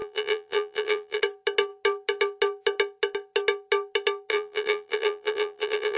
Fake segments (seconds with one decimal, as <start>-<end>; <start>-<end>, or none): 0.0-1.2; 4.3-6.0